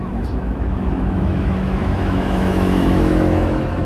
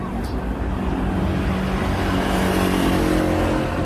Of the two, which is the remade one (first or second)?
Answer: first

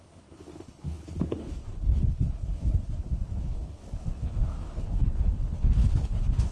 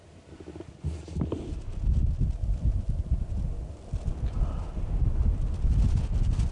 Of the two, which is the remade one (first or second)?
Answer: first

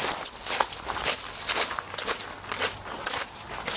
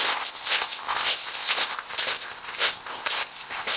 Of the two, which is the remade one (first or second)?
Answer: second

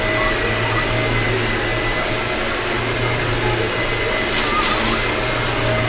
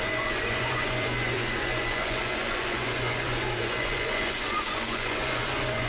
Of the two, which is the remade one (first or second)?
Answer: second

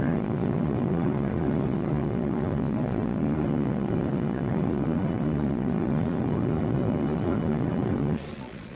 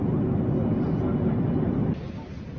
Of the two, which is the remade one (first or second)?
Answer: first